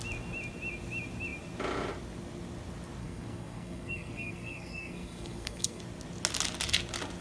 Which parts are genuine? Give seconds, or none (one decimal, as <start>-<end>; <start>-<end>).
0.0-3.0; 5.8-7.2